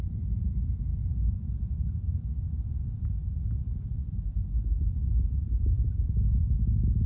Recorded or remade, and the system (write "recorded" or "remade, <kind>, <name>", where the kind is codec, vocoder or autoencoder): remade, vocoder, BigVGAN v2